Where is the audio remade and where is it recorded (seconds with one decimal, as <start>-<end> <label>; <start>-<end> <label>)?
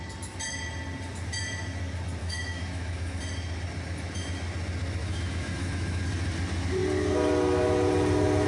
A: 0.0-2.2 recorded; 2.2-3.2 remade; 3.2-5.0 recorded; 5.0-6.0 remade; 6.0-8.5 recorded